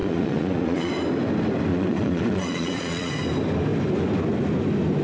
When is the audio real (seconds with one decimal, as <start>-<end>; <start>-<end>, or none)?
0.9-1.7; 3.1-5.0